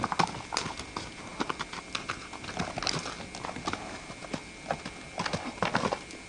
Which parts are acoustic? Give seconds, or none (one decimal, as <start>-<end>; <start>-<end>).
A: 0.0-6.3